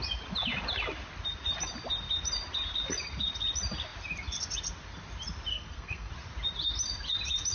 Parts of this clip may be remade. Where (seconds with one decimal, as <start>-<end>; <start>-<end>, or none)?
5.5-6.1